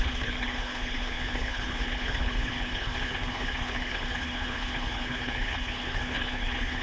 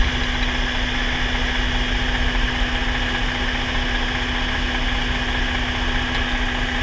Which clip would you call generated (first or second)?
first